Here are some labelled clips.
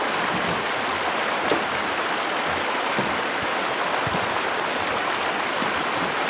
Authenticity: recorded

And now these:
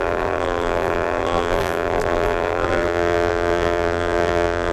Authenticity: remade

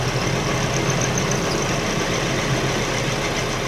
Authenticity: recorded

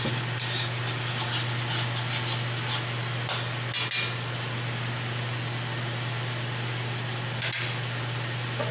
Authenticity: recorded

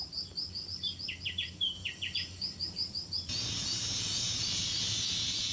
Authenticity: remade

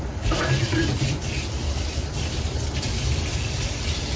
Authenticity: remade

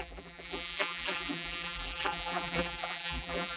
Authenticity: remade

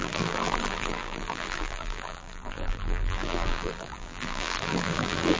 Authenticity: remade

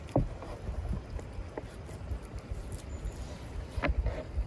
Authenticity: recorded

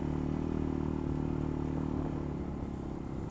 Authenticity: recorded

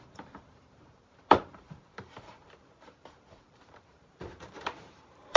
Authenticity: remade